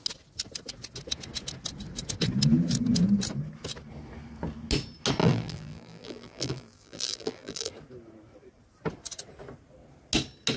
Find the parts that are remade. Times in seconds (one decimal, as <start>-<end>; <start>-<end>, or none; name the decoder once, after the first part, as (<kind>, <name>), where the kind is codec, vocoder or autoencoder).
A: 5.2-7.7 (vocoder, BigVGAN v2)